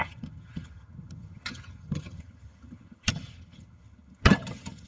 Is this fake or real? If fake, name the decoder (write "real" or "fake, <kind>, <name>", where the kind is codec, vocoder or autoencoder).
fake, vocoder, HiFi-GAN